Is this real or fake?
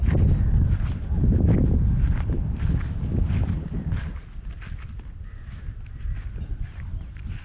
real